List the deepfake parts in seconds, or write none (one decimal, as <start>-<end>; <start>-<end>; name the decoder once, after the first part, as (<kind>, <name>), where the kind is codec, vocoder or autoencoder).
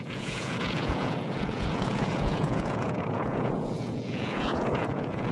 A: 0.0-5.3 (vocoder, Vocos)